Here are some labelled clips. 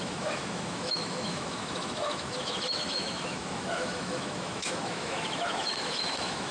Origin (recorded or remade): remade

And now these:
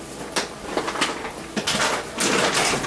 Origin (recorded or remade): recorded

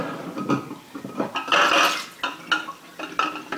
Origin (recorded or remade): recorded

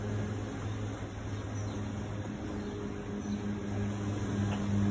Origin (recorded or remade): recorded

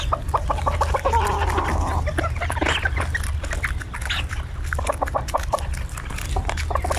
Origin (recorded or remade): recorded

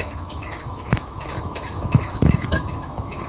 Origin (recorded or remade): remade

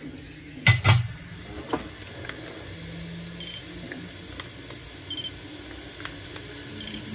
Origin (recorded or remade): recorded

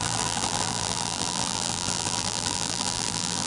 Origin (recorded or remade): remade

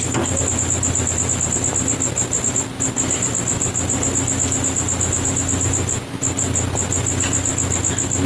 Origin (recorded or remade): recorded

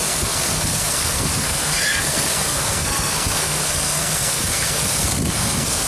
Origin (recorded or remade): remade